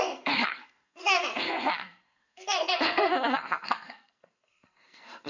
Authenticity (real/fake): fake